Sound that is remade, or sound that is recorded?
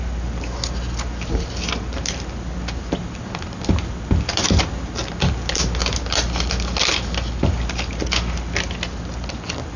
recorded